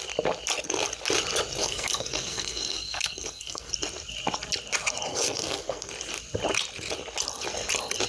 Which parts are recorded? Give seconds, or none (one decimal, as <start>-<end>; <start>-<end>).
0.0-1.6; 3.7-5.1; 5.9-8.1